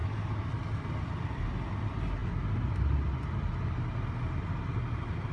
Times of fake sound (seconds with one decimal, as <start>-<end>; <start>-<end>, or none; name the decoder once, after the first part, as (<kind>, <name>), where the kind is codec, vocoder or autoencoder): none